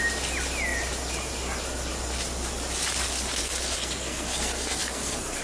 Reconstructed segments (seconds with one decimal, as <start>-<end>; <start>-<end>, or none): 3.4-5.4